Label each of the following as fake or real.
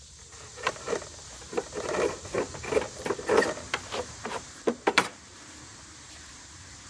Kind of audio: fake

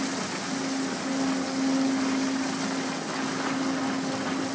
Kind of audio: real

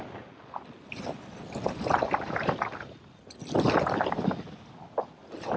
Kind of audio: real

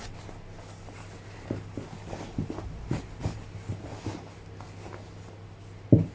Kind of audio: real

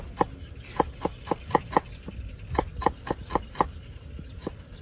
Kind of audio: real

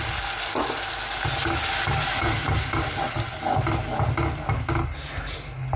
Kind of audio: real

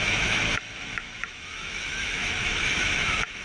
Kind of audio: fake